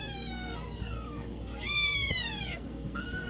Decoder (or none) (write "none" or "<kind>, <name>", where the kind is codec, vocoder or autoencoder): codec, SNAC